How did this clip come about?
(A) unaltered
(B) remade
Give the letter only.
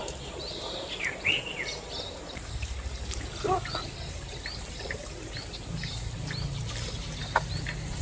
A